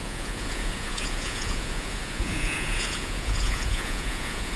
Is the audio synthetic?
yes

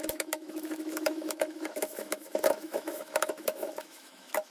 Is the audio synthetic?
yes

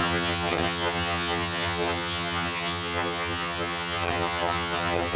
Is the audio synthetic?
yes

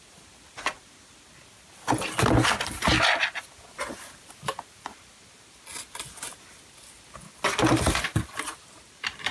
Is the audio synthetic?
no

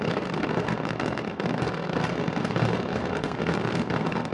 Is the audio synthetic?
yes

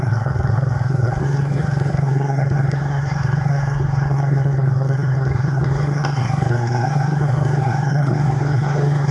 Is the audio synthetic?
yes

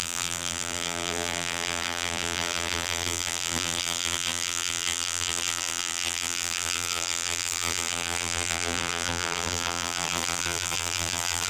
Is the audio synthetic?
yes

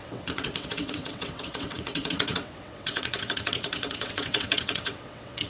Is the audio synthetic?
yes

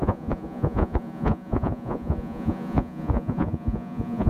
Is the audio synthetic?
yes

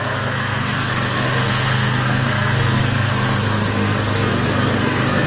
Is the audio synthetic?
yes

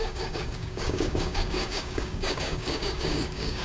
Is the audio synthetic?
yes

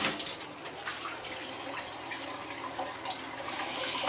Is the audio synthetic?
no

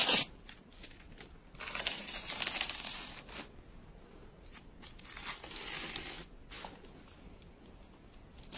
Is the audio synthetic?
no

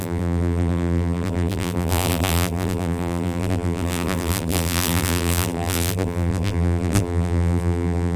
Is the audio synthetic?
yes